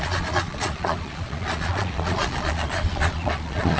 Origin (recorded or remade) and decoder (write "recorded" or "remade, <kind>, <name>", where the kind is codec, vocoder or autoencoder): remade, vocoder, Vocos